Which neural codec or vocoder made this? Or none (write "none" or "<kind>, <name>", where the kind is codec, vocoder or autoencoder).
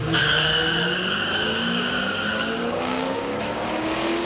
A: codec, DAC